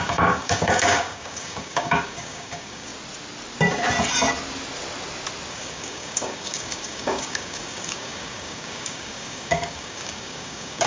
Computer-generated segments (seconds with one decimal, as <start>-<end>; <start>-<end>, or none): 0.0-2.9; 5.5-10.9